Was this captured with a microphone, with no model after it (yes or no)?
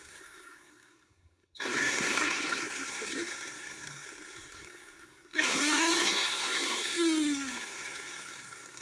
no